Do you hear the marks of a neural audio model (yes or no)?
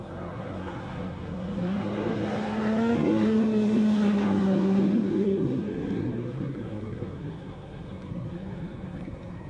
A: yes